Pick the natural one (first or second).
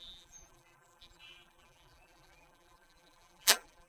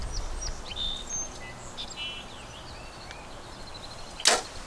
second